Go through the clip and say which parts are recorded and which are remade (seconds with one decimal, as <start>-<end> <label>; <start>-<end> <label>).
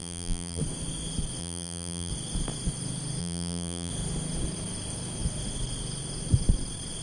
0.0-0.6 remade; 0.6-1.4 recorded; 1.4-2.1 remade; 2.1-3.2 recorded; 3.2-3.9 remade; 3.9-7.0 recorded